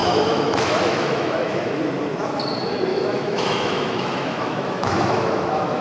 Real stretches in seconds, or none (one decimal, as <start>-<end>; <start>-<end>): 1.8-2.9